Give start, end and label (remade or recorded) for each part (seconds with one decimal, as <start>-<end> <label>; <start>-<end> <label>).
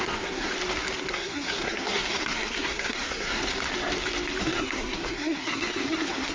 0.0-0.5 remade; 0.5-1.1 recorded; 1.1-3.5 remade; 3.5-4.4 recorded; 4.4-6.3 remade